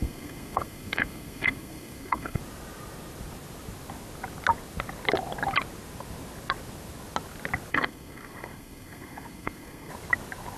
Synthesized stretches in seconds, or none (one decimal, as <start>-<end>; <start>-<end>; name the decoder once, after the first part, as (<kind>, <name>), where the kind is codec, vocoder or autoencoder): 0.0-2.4 (codec, SNAC); 7.7-9.9